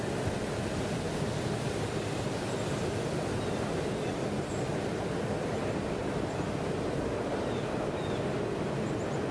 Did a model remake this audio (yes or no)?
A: no